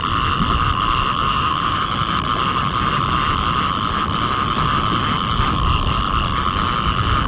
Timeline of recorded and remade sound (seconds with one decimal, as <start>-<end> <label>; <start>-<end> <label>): 0.0-1.2 recorded; 1.2-1.9 remade; 1.9-7.3 recorded